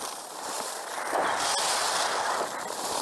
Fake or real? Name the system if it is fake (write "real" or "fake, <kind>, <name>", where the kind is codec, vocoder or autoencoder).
real